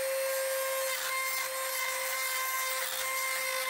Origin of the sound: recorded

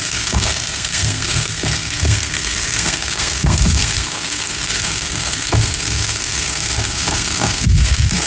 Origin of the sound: remade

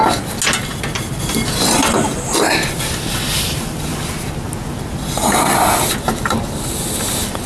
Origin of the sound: recorded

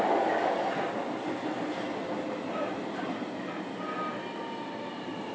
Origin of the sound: recorded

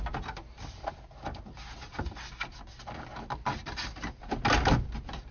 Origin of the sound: recorded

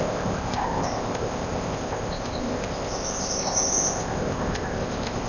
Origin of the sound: remade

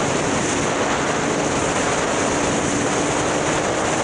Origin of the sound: recorded